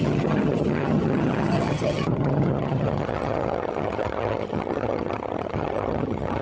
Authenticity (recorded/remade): remade